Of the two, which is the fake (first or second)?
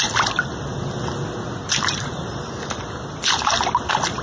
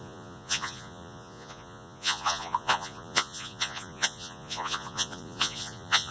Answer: second